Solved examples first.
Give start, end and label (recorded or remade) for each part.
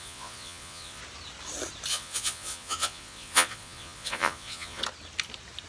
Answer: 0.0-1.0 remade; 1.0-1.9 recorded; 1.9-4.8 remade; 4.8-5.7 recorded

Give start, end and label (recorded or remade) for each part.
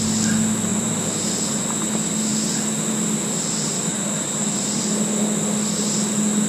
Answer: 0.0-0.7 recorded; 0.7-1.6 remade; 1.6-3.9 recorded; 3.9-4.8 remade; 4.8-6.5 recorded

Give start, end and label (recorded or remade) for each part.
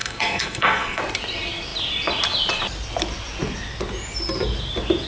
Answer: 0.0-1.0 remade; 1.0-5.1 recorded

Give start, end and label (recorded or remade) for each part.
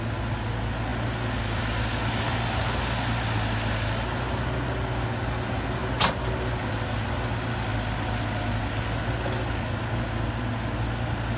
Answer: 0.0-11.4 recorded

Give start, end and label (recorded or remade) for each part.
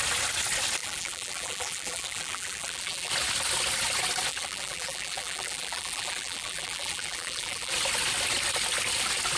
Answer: 0.0-0.8 recorded; 0.8-3.1 remade; 3.1-4.3 recorded; 4.3-7.7 remade; 7.7-9.4 recorded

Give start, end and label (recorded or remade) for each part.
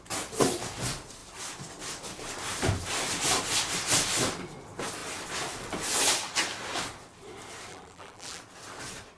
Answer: 0.0-7.7 recorded; 7.7-8.4 remade; 8.4-9.2 recorded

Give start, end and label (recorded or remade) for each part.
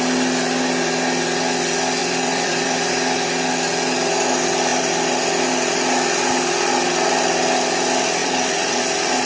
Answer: 0.0-2.0 recorded; 2.0-2.9 remade; 2.9-4.7 recorded; 4.7-5.3 remade; 5.3-8.2 recorded; 8.2-8.8 remade; 8.8-9.3 recorded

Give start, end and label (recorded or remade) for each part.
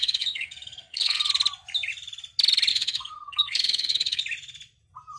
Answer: 0.0-1.3 remade; 1.3-2.7 recorded; 2.7-4.2 remade; 4.2-5.2 recorded